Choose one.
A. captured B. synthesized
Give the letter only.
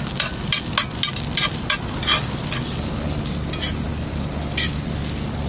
A